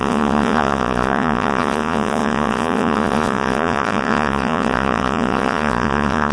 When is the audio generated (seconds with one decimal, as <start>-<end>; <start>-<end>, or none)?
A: 0.0-6.3